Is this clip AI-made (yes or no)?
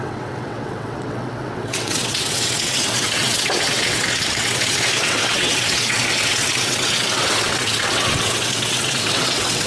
yes